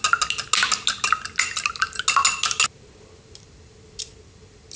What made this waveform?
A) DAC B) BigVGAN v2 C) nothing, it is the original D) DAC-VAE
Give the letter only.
C